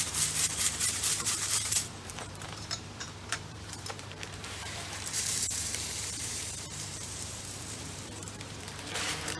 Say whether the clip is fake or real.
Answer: fake